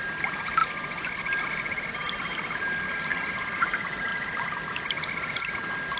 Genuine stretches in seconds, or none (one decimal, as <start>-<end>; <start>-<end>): 0.0-6.0

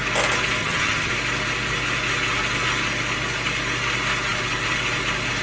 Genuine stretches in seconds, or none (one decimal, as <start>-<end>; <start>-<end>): 0.0-0.6; 1.1-5.4

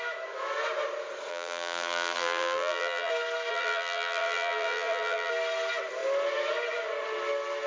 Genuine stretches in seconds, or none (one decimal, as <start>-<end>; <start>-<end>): 0.0-1.3; 3.1-3.5; 5.3-7.7

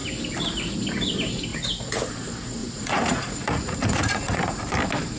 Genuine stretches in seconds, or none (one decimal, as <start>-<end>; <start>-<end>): 0.0-2.6; 4.6-5.2

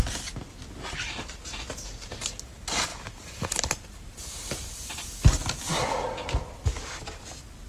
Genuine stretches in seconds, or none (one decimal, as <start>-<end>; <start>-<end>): 0.0-2.9; 5.2-7.7

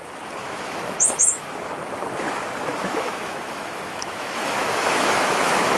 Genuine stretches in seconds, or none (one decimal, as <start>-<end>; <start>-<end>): 0.0-0.4; 1.5-2.8

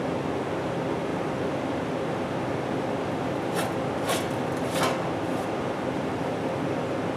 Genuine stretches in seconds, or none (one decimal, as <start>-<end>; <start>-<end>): 0.0-7.2